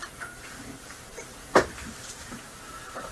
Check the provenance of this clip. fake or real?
fake